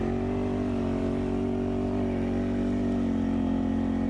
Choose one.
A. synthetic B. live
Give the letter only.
B